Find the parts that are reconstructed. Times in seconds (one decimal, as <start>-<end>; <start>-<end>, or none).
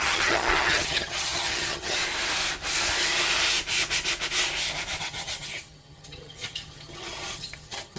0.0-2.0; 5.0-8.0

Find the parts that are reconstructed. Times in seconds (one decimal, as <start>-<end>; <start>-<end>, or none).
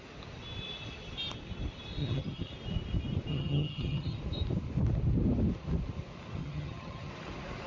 2.0-2.5; 3.3-4.2; 6.4-7.1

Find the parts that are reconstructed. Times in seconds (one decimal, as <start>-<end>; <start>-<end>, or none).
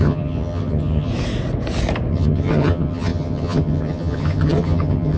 0.0-1.1; 2.1-5.2